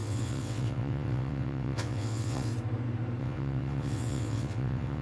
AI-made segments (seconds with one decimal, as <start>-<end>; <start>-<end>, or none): 0.0-2.5; 3.2-5.0